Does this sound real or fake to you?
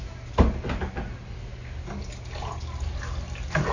real